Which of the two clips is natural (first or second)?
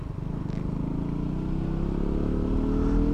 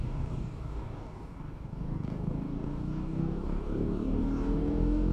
first